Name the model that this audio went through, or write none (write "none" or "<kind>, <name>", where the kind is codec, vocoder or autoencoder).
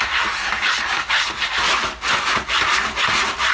none